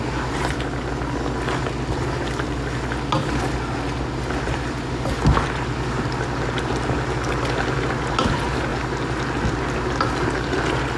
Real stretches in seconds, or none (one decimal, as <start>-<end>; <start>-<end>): 0.0-11.0

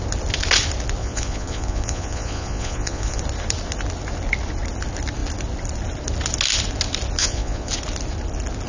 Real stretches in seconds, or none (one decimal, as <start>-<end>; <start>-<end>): 0.0-1.0; 3.2-7.2; 7.7-8.7

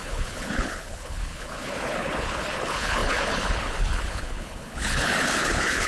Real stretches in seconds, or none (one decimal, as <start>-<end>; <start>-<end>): none

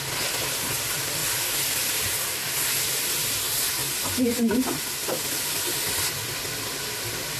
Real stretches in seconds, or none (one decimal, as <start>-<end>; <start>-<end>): 0.0-7.4

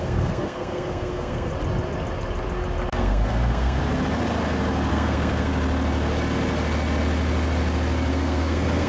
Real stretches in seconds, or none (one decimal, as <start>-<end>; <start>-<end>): 1.5-2.9; 3.8-4.9; 5.5-8.1